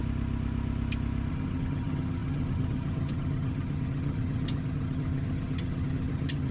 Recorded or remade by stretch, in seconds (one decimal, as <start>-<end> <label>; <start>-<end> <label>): 0.0-1.3 recorded; 1.3-6.5 remade